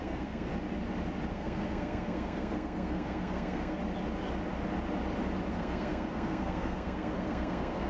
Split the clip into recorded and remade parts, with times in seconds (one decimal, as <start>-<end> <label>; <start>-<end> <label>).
0.0-0.5 remade; 0.5-1.3 recorded; 1.3-3.8 remade; 3.8-5.5 recorded; 5.5-7.9 remade